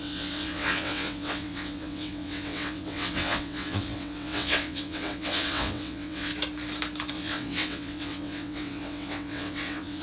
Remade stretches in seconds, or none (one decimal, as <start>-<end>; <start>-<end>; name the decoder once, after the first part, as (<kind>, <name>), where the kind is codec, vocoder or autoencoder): 0.0-6.3 (vocoder, WaveNeXt); 7.1-10.0